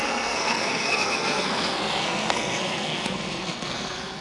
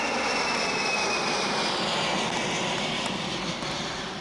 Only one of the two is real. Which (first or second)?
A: second